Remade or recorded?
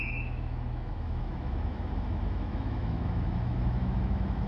remade